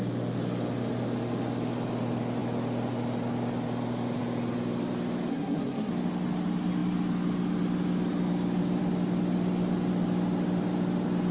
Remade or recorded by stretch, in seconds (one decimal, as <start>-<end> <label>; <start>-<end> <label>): 0.0-5.3 recorded; 5.3-5.9 remade; 5.9-11.3 recorded